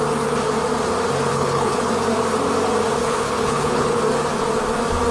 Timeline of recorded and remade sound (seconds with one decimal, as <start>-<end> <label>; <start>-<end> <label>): 0.0-1.3 recorded; 1.3-1.9 remade; 1.9-3.0 recorded; 3.0-4.0 remade; 4.0-5.1 recorded